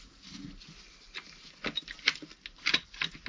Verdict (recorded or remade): recorded